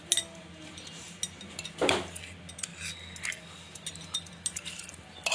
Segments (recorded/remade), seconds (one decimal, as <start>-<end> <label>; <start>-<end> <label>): 0.0-5.3 recorded